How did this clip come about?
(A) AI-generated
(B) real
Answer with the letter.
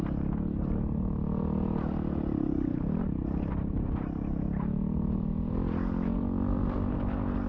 B